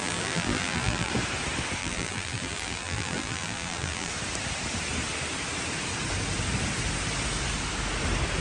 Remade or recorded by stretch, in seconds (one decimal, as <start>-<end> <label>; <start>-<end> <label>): 0.0-1.1 remade; 1.1-1.8 recorded; 1.8-4.1 remade; 4.1-8.4 recorded